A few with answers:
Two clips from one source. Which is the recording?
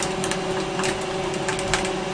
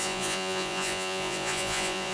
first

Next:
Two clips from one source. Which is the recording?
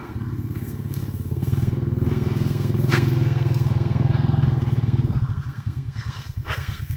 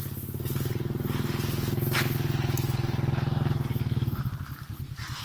second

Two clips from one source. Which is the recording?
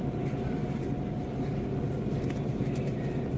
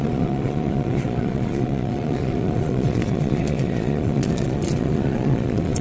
first